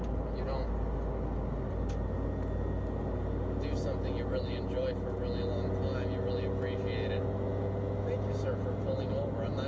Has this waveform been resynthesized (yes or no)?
no